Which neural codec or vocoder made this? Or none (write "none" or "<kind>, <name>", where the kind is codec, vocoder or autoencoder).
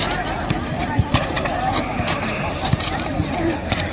vocoder, BigVGAN v2